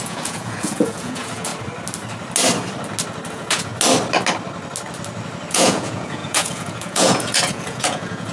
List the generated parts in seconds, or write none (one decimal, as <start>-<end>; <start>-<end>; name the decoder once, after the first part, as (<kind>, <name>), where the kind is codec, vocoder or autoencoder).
0.0-1.5 (vocoder, Vocos); 3.3-3.7; 5.5-8.3